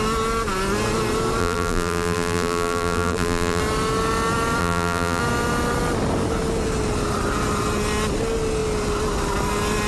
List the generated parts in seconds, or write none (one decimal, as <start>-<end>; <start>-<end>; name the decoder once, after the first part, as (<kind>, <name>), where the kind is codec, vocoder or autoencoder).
1.4-3.6 (vocoder, BigVGAN v2); 4.6-5.2